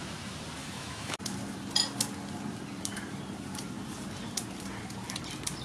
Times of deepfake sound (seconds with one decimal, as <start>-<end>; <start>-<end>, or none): 0.6-1.2